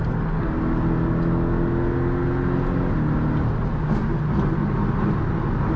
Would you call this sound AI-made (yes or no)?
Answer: no